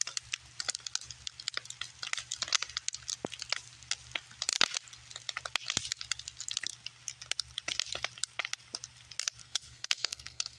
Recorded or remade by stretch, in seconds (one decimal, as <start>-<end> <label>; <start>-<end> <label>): 0.0-9.4 recorded; 9.4-10.6 remade